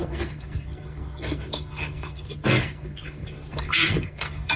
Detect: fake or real fake